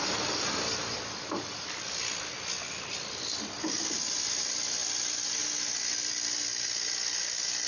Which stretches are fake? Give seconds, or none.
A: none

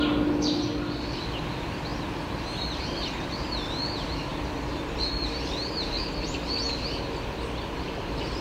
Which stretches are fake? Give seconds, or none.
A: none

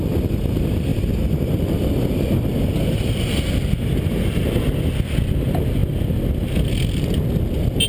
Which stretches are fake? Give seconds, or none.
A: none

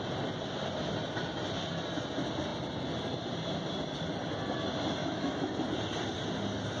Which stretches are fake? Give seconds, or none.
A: 5.0-5.5 (autoencoder, DAC-VAE)

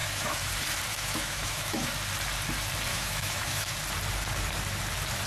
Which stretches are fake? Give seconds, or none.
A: 0.0-0.5 (autoencoder, DAC-VAE); 0.9-1.9; 2.9-3.7

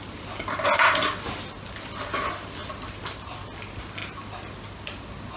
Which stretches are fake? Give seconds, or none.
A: none

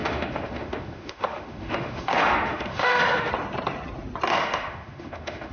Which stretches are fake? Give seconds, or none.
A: 0.0-3.3 (autoencoder, DAC-VAE); 4.3-5.5

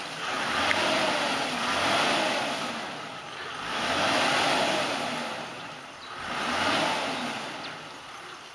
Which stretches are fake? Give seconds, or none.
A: 3.7-4.2 (autoencoder, DAC-VAE)